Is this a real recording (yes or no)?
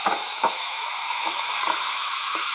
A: no